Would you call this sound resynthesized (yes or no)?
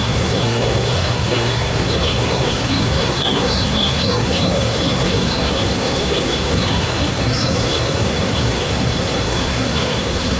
yes